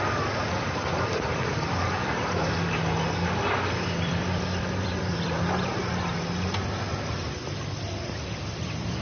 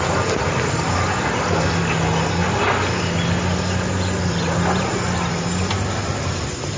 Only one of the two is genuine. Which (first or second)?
second